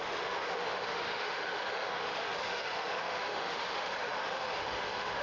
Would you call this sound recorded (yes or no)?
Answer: no